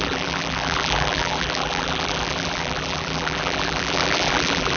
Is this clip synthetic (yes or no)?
yes